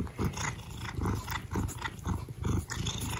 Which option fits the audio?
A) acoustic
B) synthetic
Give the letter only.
A